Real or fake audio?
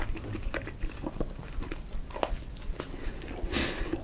real